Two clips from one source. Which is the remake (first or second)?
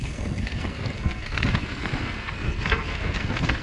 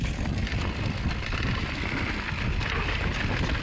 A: first